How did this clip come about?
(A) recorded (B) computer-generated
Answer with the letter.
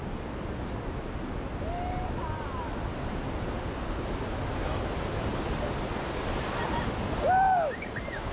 A